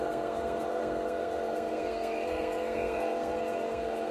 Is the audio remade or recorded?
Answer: remade